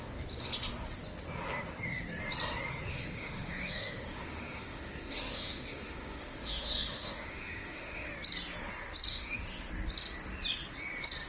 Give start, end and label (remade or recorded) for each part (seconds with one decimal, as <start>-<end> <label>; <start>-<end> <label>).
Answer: 0.0-2.9 recorded; 2.9-8.1 remade; 8.1-9.1 recorded; 9.1-9.7 remade; 9.7-11.3 recorded